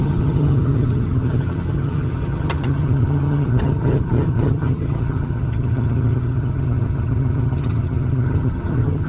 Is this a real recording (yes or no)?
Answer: no